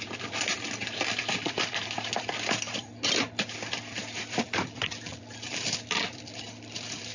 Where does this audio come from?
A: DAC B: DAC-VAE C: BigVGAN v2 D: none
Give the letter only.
C